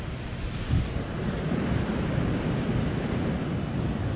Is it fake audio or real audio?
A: real